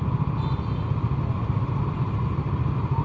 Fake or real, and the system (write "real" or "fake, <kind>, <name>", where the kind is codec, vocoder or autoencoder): real